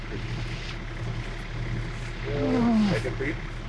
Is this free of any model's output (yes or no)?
yes